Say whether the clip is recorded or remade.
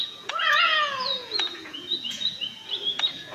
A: remade